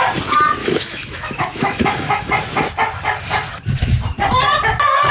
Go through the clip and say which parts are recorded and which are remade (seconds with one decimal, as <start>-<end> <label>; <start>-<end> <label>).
0.0-0.6 recorded; 0.6-2.3 remade; 2.3-5.1 recorded